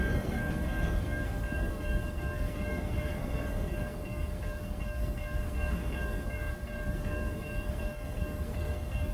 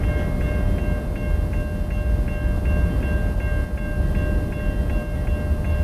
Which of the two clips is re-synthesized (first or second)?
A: first